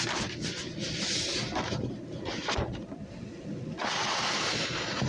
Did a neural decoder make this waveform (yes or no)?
no